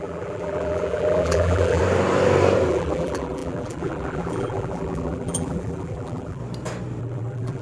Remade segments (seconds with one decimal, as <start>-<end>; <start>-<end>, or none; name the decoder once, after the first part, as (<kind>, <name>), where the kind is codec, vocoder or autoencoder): 0.0-1.8 (vocoder, BigVGAN v2); 2.7-6.4; 7.0-7.6